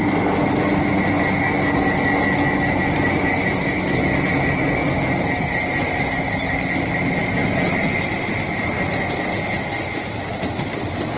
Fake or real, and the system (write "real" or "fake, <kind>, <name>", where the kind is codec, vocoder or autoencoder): real